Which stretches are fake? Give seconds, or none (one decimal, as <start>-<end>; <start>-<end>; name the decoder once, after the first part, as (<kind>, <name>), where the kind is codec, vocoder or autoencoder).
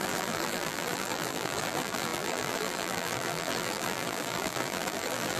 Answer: 0.0-5.4 (vocoder, BigVGAN v2)